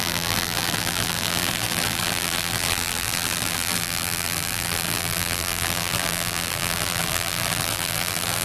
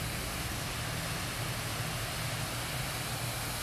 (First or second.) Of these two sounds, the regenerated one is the first